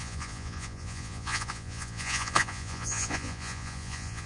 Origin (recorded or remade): remade